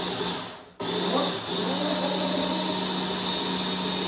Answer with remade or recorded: recorded